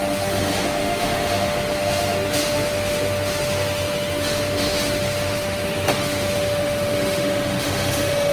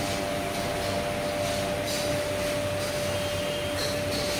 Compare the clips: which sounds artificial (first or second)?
first